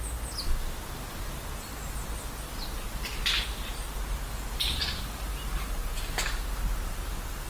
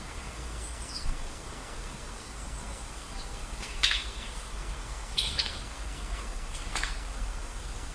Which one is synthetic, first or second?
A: second